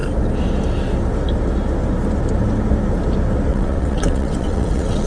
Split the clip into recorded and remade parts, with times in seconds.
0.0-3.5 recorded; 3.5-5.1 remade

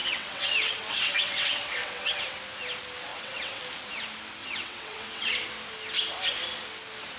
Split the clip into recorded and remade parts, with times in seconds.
0.0-2.2 remade; 2.2-3.1 recorded; 3.1-3.6 remade; 3.6-4.4 recorded; 4.4-5.3 remade; 5.3-7.2 recorded

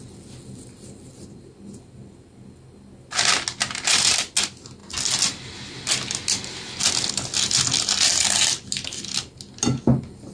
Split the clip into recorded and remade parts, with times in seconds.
0.0-10.3 recorded

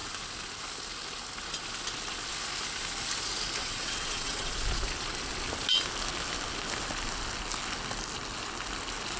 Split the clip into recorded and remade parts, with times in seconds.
0.0-3.6 recorded; 3.6-4.5 remade; 4.5-9.2 recorded

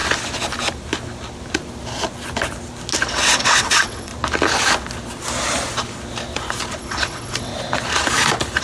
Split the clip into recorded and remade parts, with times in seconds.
0.0-3.1 recorded; 3.1-4.1 remade; 4.1-6.8 recorded; 6.8-7.5 remade; 7.5-8.6 recorded

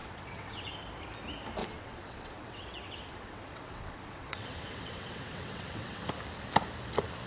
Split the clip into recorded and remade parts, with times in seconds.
0.0-0.7 remade; 0.7-1.6 recorded; 1.6-6.0 remade; 6.0-7.3 recorded

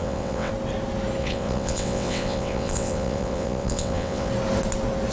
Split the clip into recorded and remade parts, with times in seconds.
0.0-0.5 remade; 0.5-1.2 recorded; 1.2-4.3 remade; 4.3-5.1 recorded

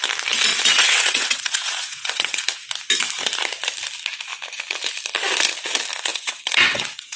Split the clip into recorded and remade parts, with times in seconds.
0.0-0.5 recorded; 0.5-2.4 remade; 2.4-6.1 recorded; 6.1-7.2 remade